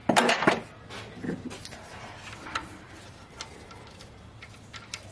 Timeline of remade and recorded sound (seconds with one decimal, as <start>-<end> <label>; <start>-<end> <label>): 0.0-5.1 recorded

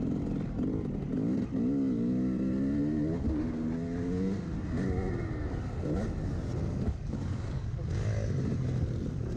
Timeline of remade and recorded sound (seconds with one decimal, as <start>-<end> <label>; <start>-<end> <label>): 0.0-6.6 recorded; 6.6-7.8 remade; 7.8-9.4 recorded

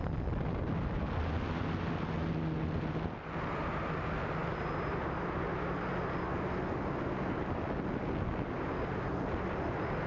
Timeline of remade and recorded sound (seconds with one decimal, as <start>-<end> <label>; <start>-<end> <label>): 0.0-10.1 recorded

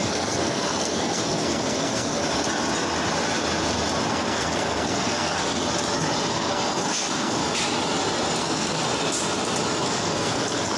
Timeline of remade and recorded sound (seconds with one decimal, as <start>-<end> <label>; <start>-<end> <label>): 0.0-2.2 remade; 2.2-4.1 recorded; 4.1-5.6 remade; 5.6-6.3 recorded; 6.3-7.4 remade; 7.4-8.4 recorded; 8.4-8.8 remade; 8.8-9.8 recorded; 9.8-10.8 remade

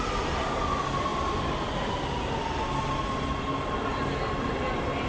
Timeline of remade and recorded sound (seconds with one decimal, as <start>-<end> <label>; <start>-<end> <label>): 0.0-5.1 recorded

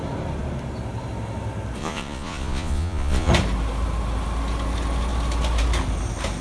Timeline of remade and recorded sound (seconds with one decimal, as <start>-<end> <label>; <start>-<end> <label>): 0.0-1.8 recorded; 1.8-3.3 remade; 3.3-6.4 recorded

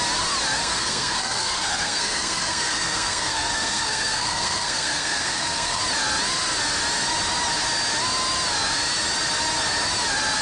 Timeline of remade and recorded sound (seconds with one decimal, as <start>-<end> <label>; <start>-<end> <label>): 0.0-0.6 recorded; 0.6-5.8 remade; 5.8-10.4 recorded